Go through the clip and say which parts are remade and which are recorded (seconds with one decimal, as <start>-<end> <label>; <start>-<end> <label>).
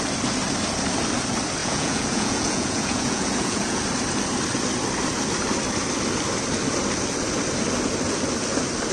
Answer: 0.0-1.6 recorded; 1.6-3.8 remade; 3.8-8.9 recorded